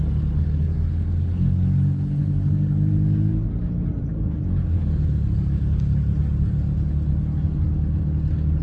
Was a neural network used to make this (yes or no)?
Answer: no